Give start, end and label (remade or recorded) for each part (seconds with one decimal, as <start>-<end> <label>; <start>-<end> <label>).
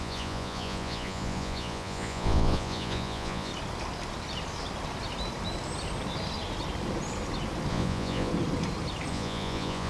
0.0-3.5 remade; 3.5-7.7 recorded; 7.7-8.3 remade; 8.3-9.1 recorded; 9.1-9.9 remade